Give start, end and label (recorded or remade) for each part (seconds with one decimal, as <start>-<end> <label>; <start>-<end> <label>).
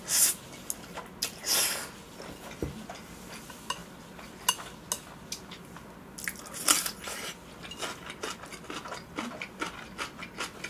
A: 0.0-10.7 recorded